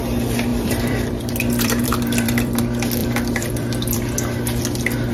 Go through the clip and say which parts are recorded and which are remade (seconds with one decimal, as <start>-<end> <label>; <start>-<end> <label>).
0.0-0.5 recorded; 0.5-2.6 remade; 2.6-3.0 recorded; 3.0-4.0 remade; 4.0-5.1 recorded